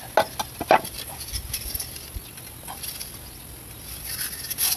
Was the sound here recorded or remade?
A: recorded